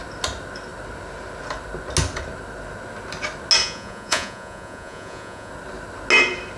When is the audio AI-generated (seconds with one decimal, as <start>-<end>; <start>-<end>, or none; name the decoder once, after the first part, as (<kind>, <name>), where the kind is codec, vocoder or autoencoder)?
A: 3.6-5.5 (vocoder, Vocos)